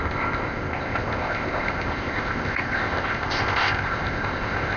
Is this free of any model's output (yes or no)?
no